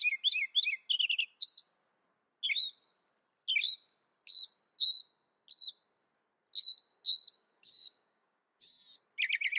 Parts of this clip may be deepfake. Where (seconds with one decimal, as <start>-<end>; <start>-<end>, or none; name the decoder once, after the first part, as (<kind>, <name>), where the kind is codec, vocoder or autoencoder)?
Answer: 7.4-9.0 (codec, DAC)

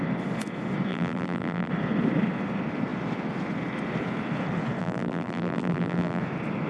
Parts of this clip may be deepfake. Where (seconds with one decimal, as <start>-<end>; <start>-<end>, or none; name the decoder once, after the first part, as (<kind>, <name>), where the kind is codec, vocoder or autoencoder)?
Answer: 0.9-1.7 (vocoder, BigVGAN v2); 4.8-6.2

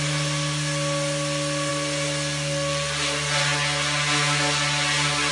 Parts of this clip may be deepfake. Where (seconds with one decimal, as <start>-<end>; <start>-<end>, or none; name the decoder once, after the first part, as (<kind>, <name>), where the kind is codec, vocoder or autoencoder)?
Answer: none

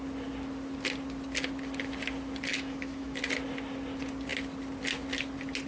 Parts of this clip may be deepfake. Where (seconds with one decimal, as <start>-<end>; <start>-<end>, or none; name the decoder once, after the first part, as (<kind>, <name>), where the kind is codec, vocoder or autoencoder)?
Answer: 2.5-3.2 (autoencoder, DAC-VAE)

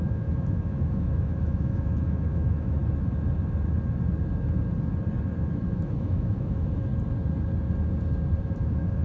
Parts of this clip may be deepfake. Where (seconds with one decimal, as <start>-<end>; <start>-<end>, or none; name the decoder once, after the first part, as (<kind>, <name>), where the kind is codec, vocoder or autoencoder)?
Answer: 0.0-2.8 (autoencoder, DAC-VAE); 5.5-6.9; 8.4-9.0